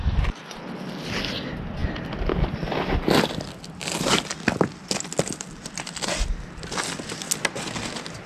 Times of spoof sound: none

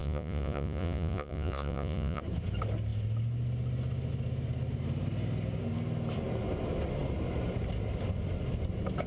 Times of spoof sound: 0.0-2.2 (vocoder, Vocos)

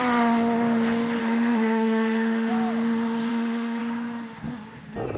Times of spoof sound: 1.2-2.5 (autoencoder, DAC-VAE); 3.3-3.8

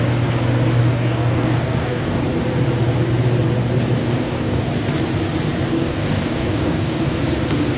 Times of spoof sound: 0.8-2.2 (codec, DAC); 4.0-4.6; 5.7-7.2

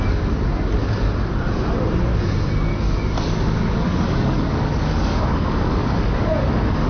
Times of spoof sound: 2.7-6.9 (codec, DAC)